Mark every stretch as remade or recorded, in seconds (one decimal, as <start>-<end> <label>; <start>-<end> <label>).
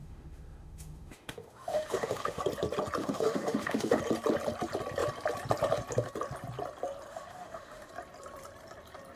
0.0-2.4 remade; 2.4-3.0 recorded; 3.0-4.0 remade; 4.0-7.1 recorded; 7.1-7.9 remade; 7.9-9.2 recorded